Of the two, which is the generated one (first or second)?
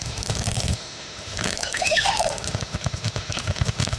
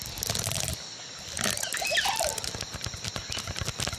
first